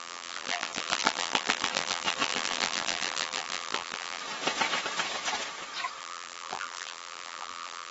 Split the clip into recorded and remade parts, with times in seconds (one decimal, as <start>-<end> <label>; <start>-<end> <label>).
0.0-4.2 remade; 4.2-6.0 recorded; 6.0-7.9 remade